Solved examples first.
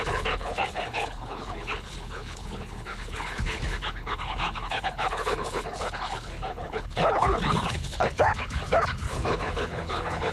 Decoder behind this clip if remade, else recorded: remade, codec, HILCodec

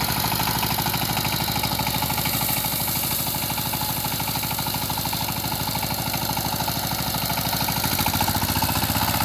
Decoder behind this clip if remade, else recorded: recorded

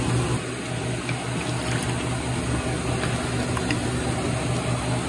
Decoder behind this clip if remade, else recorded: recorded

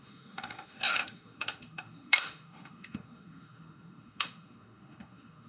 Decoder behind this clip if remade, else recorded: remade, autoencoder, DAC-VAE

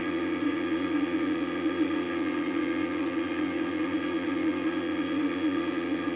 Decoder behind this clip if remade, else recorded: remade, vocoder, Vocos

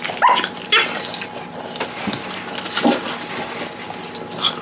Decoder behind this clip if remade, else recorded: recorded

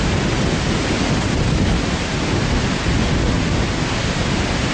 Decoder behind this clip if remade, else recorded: recorded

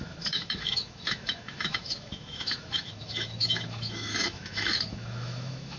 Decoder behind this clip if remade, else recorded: remade, autoencoder, DAC-VAE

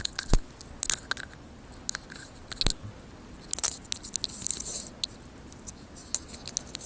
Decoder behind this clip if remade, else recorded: recorded